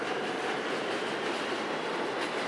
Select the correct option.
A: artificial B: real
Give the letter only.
A